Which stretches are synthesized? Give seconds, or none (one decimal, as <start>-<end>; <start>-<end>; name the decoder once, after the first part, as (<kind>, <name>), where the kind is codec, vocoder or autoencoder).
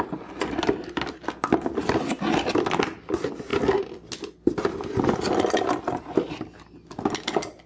none